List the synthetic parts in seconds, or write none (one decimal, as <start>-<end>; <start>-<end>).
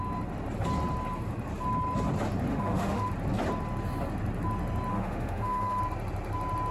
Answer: 2.5-3.1; 4.9-5.8